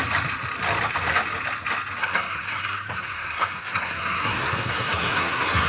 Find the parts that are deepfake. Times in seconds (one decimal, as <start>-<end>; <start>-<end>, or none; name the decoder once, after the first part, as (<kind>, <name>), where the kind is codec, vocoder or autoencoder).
2.0-5.7 (codec, SNAC)